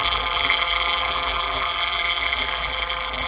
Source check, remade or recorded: remade